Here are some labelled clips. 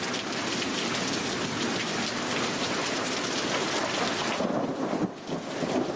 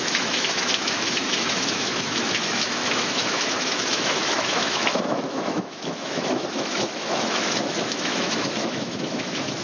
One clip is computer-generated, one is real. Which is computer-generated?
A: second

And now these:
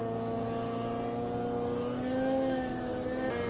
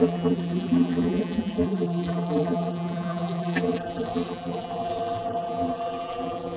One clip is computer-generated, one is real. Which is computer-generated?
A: second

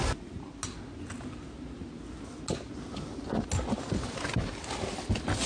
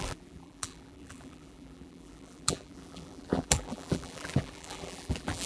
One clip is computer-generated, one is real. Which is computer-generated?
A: second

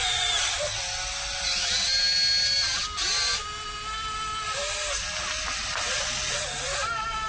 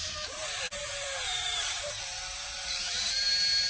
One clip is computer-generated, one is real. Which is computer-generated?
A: second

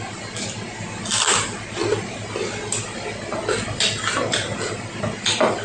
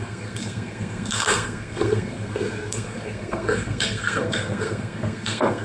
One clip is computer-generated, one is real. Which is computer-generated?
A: second